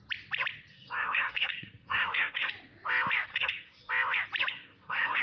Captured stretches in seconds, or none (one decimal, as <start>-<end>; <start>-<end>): 0.0-0.7; 2.5-3.3; 3.9-4.5